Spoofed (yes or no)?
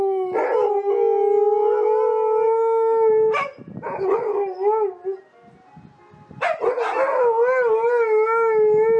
no